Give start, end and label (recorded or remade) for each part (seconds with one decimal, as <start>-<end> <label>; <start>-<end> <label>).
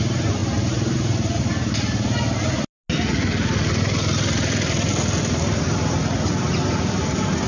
0.0-7.5 recorded